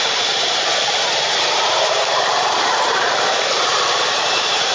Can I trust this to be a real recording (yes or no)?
no